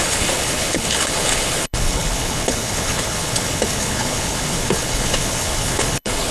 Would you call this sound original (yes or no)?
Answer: no